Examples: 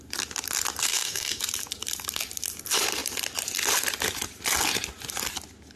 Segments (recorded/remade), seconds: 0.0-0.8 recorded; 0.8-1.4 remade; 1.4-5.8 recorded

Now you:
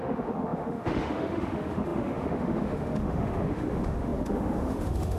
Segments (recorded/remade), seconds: 0.0-5.2 remade

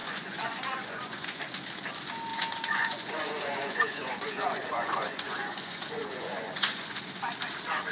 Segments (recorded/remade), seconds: 0.0-1.4 remade; 1.4-2.3 recorded; 2.3-7.0 remade; 7.0-7.9 recorded

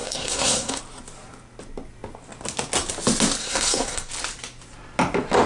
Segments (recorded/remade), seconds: 0.0-0.8 remade; 0.8-3.4 recorded; 3.4-4.1 remade; 4.1-5.5 recorded

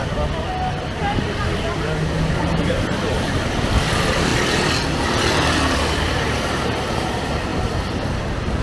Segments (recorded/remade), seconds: 0.0-0.8 recorded; 0.8-4.3 remade; 4.3-4.9 recorded; 4.9-8.6 remade

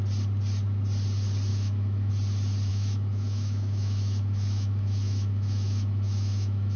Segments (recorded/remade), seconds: 0.0-1.5 recorded; 1.5-2.1 remade; 2.1-2.7 recorded; 2.7-6.8 remade